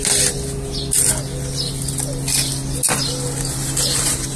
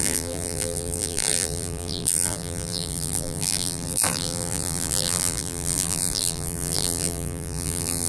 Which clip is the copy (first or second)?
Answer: second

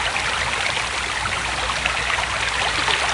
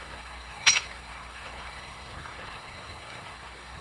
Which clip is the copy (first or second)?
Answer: second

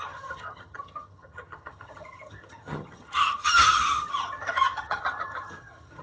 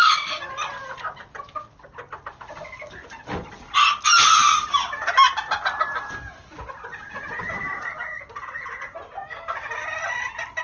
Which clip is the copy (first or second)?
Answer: first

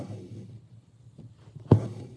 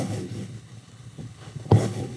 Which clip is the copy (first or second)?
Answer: second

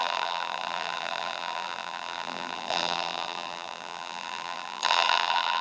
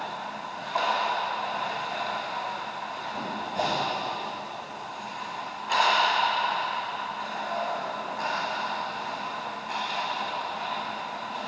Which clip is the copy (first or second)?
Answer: first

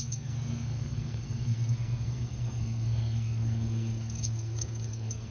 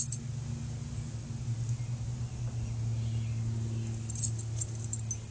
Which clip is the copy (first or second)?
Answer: first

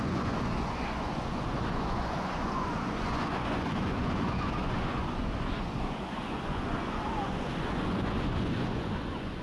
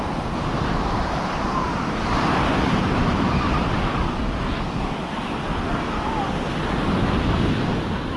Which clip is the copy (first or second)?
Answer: first